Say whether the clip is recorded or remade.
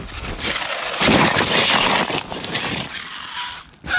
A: recorded